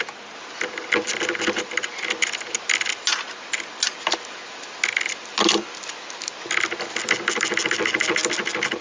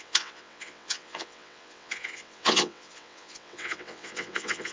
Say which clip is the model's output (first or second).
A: second